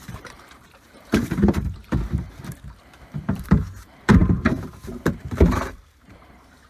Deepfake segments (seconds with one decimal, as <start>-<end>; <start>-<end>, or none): 0.0-6.7